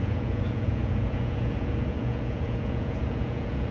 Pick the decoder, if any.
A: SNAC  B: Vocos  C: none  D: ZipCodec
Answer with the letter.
B